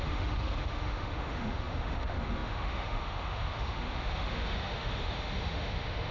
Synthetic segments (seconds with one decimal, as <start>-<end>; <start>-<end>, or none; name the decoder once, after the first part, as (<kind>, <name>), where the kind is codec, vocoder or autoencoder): 0.0-6.1 (autoencoder, DAC-VAE)